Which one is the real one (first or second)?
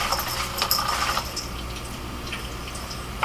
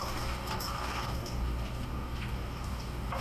first